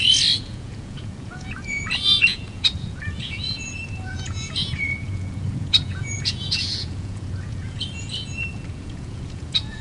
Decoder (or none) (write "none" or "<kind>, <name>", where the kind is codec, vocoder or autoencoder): vocoder, Vocos